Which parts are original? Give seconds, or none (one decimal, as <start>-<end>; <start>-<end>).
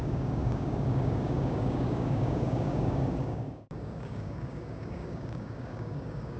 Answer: none